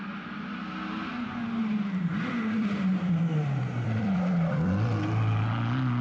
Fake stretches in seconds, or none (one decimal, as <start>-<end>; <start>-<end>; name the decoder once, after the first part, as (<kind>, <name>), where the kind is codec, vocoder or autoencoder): 1.6-5.1 (vocoder, BigVGAN v2)